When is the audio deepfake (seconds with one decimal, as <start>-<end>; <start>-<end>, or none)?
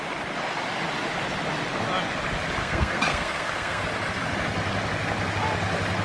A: 2.6-3.8